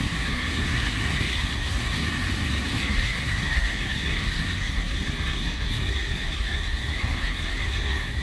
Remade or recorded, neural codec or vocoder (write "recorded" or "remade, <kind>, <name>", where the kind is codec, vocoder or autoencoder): remade, codec, SNAC